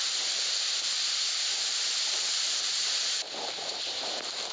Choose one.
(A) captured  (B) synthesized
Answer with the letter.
A